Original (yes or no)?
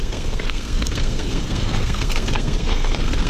no